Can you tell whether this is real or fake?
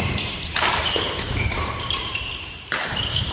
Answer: fake